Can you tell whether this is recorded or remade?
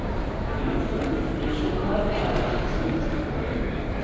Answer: recorded